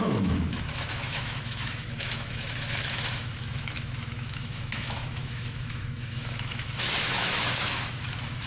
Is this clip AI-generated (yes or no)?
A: yes